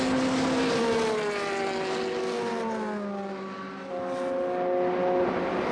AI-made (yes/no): no